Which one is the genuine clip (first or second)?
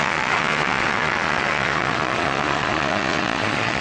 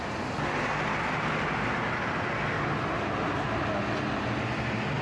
second